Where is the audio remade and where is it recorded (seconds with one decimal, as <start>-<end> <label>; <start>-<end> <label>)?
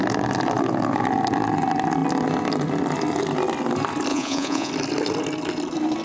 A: 0.0-4.1 recorded; 4.1-4.7 remade; 4.7-6.0 recorded